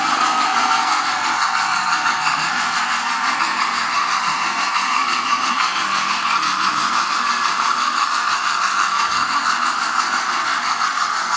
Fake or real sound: fake